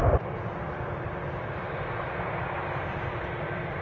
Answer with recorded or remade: remade